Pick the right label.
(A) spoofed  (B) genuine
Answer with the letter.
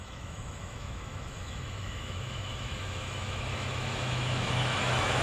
A